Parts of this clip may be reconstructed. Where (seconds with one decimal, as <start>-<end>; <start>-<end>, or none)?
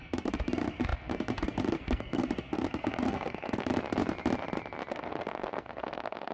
0.0-3.7; 4.9-6.3